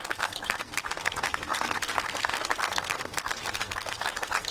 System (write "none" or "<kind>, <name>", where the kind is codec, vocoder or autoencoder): codec, SNAC